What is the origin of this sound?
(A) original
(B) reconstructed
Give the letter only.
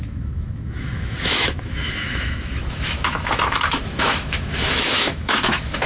B